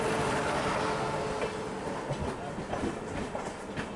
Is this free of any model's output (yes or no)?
yes